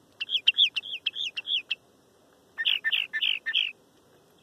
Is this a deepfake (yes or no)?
yes